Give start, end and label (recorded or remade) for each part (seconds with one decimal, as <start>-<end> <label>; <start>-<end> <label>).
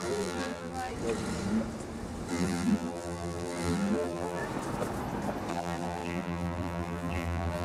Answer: 0.0-0.9 remade; 0.9-2.3 recorded; 2.3-4.4 remade; 4.4-5.5 recorded; 5.5-7.6 remade